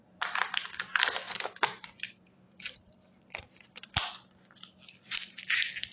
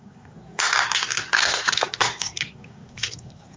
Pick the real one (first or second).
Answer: first